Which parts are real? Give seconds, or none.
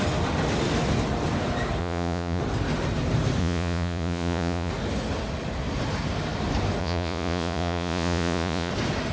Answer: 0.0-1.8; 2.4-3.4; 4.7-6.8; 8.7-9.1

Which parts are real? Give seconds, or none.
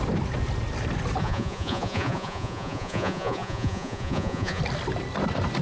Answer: 0.0-1.2; 4.6-5.6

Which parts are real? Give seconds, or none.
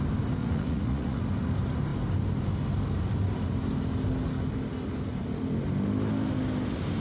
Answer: 0.0-0.4; 1.2-7.0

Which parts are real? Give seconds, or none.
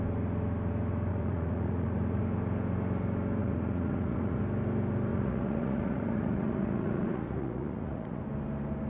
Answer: 0.0-1.1; 2.2-3.4; 4.4-5.1; 8.2-8.9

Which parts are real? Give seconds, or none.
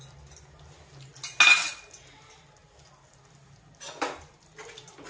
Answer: 0.0-5.1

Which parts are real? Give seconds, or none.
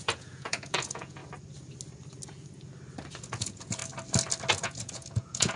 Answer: 1.2-3.2; 3.8-4.5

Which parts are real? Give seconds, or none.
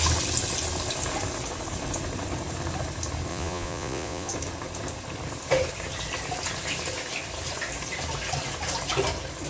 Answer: 0.0-3.3; 4.3-9.5